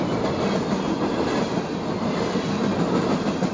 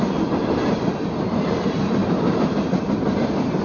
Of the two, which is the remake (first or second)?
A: second